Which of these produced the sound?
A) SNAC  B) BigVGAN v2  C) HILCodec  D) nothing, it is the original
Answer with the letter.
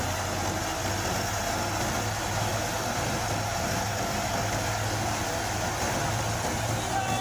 D